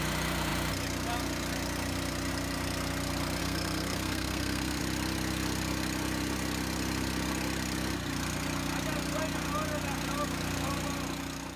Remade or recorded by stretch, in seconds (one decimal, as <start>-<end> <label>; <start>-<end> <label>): 0.0-3.4 recorded; 3.4-4.8 remade; 4.8-11.6 recorded

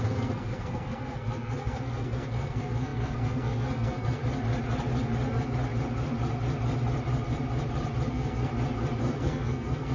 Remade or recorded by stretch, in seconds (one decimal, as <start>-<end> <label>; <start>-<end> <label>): 0.0-4.2 remade; 4.2-8.1 recorded; 8.1-8.5 remade; 8.5-9.0 recorded; 9.0-9.9 remade

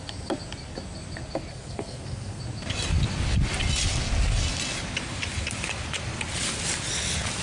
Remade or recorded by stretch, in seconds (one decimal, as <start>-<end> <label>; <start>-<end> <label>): 0.0-1.5 recorded; 1.5-2.4 remade; 2.4-7.4 recorded

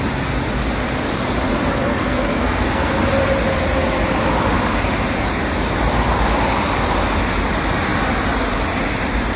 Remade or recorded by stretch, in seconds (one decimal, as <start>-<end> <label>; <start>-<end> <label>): 0.0-1.8 recorded; 1.8-3.0 remade; 3.0-9.4 recorded

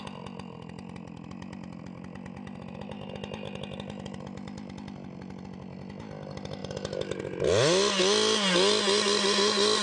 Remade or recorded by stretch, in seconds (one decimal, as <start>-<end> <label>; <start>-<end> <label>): 0.0-9.8 recorded

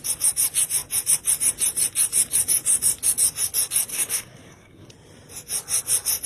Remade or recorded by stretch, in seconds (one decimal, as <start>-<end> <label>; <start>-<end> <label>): 0.0-3.9 recorded; 3.9-4.9 remade; 4.9-6.3 recorded

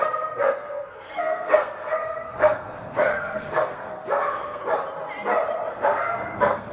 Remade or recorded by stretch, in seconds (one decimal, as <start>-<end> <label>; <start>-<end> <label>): 0.0-4.6 remade; 4.6-5.7 recorded; 5.7-6.7 remade

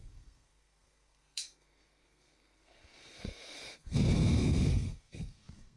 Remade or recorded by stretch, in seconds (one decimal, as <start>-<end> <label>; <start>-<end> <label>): 0.0-5.8 remade